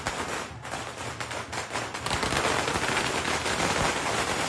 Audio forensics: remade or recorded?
recorded